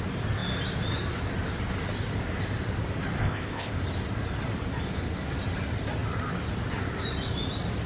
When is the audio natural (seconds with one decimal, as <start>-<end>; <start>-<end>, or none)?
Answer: 0.0-3.2; 3.8-7.9